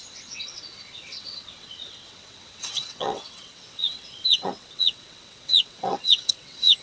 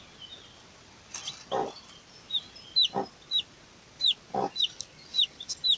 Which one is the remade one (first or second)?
first